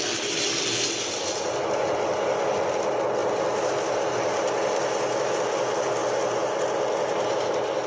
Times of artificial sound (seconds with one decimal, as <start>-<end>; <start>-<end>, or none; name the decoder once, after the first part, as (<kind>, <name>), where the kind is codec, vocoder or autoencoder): none